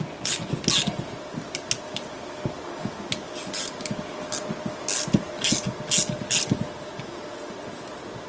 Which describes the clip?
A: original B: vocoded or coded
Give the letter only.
A